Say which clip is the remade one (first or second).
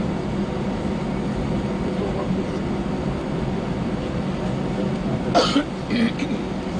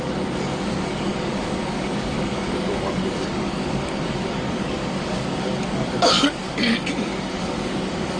second